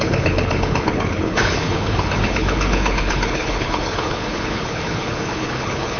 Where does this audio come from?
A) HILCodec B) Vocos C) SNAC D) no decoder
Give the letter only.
A